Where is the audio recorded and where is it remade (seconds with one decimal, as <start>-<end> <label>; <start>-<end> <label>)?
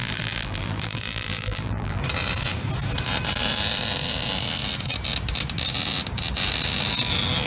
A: 0.0-2.0 remade; 2.0-7.5 recorded